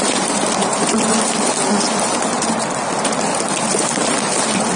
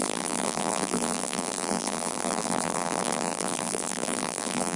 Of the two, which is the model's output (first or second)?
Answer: second